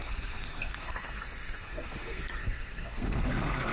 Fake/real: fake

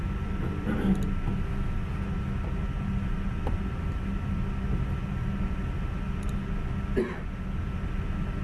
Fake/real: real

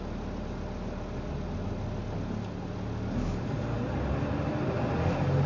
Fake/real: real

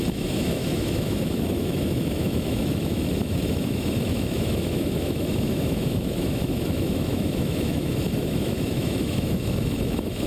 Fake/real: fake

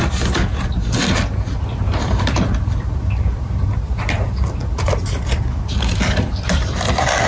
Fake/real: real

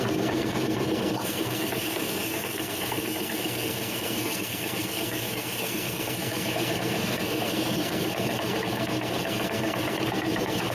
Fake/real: fake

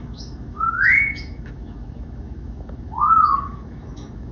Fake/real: fake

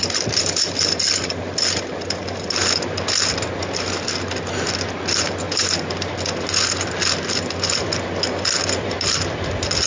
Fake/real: real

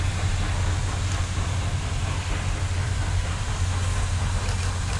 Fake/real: real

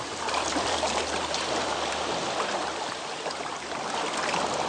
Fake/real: fake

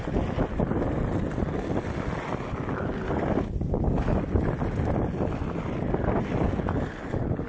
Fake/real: real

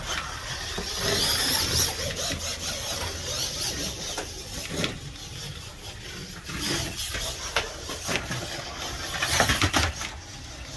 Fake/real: real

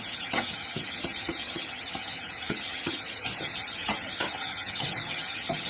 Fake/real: fake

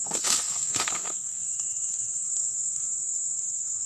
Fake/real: fake